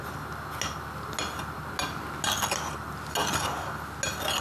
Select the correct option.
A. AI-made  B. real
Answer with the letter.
B